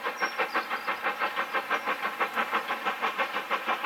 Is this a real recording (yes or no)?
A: no